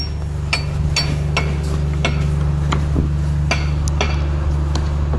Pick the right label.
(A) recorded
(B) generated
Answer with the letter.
A